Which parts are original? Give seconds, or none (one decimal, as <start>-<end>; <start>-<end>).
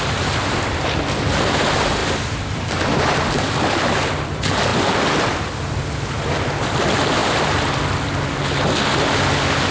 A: 0.0-2.0; 2.7-7.2; 7.8-9.7